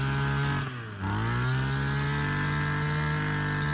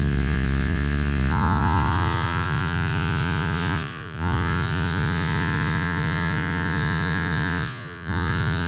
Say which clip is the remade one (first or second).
second